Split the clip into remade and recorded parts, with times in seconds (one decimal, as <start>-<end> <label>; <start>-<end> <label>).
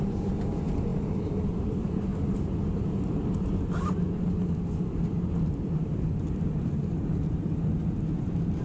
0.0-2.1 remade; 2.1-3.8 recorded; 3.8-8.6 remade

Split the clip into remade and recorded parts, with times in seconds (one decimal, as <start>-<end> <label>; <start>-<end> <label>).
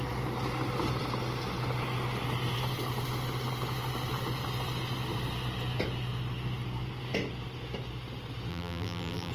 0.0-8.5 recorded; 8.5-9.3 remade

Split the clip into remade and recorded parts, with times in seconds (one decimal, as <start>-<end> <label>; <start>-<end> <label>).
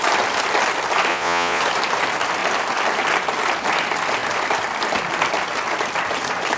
0.0-1.1 recorded; 1.1-1.6 remade; 1.6-6.6 recorded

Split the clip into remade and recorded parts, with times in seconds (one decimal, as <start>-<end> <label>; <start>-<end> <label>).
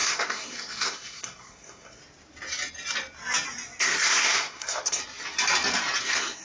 0.0-2.0 remade; 2.0-3.8 recorded; 3.8-5.0 remade; 5.0-6.0 recorded; 6.0-6.4 remade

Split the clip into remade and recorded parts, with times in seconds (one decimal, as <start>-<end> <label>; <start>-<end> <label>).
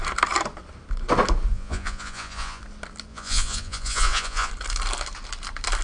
0.0-1.5 recorded; 1.5-2.6 remade; 2.6-3.1 recorded; 3.1-4.5 remade; 4.5-5.8 recorded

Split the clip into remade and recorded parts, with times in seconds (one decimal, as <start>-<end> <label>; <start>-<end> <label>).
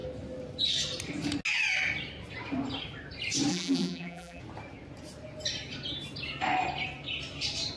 0.0-3.5 recorded; 3.5-4.4 remade; 4.4-7.8 recorded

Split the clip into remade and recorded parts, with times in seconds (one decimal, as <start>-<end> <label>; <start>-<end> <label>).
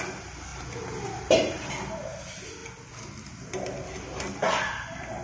0.0-5.2 recorded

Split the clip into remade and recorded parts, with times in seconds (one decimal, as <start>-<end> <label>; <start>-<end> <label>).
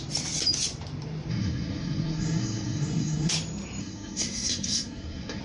0.0-1.3 recorded; 1.3-3.3 remade; 3.3-3.8 recorded; 3.8-5.4 remade